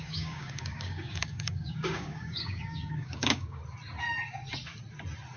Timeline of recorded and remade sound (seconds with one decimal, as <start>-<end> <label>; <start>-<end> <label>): 0.0-3.6 remade; 3.6-5.4 recorded